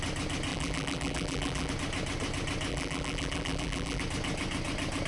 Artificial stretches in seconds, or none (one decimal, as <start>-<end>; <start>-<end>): 0.5-1.7; 2.7-4.0